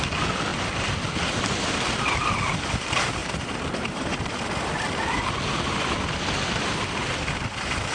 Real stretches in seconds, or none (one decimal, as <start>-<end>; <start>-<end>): 0.0-3.2; 5.7-7.9

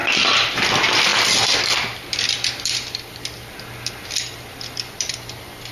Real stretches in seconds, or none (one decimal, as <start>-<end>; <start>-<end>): 0.5-5.7

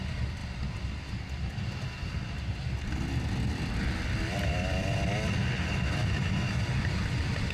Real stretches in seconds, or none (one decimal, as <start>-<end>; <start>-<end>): 0.0-7.5

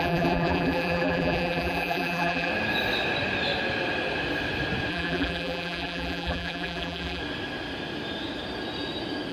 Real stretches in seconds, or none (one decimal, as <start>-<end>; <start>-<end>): 2.5-4.9; 7.2-9.3

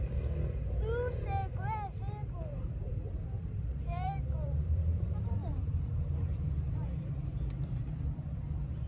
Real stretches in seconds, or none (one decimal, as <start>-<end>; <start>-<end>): 0.0-2.2; 6.5-7.3